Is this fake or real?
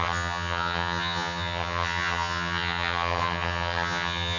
fake